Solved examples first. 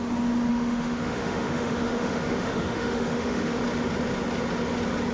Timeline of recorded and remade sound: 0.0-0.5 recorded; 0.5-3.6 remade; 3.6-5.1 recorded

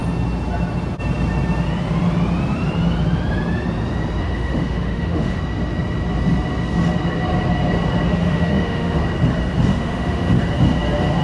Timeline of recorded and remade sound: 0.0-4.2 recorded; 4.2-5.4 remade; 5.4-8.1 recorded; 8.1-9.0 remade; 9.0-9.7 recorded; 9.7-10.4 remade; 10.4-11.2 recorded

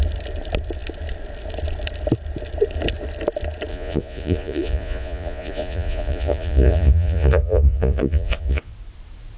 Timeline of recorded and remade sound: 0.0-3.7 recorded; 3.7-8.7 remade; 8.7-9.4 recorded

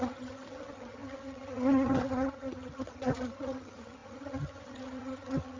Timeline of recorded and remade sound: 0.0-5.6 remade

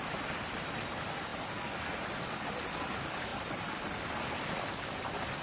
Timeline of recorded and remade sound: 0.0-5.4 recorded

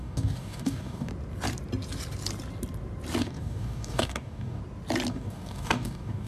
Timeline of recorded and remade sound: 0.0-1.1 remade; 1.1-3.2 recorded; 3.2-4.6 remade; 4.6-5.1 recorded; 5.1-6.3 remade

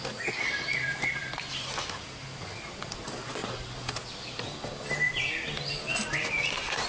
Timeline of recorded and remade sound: 0.0-6.9 recorded

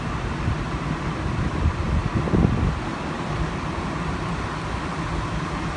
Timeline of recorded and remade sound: 0.0-5.8 recorded